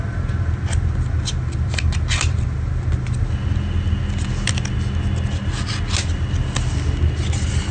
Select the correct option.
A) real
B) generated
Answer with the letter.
A